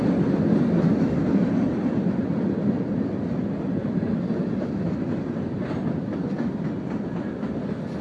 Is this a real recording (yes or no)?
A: yes